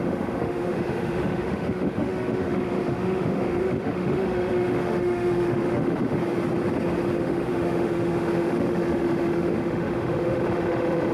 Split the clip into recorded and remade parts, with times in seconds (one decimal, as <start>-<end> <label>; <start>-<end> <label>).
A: 0.0-6.2 remade; 6.2-7.1 recorded; 7.1-11.1 remade